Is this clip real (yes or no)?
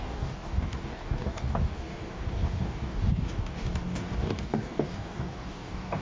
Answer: no